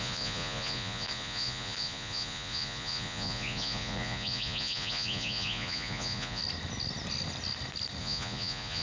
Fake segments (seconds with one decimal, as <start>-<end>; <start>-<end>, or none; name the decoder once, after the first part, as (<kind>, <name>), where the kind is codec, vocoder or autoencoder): 0.0-6.4 (vocoder, Vocos); 8.0-8.8